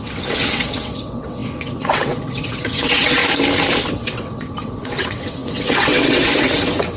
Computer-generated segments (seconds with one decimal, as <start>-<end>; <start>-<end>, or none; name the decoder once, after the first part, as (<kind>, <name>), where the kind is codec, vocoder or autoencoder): 0.0-3.2 (vocoder, WaveNeXt); 3.9-7.0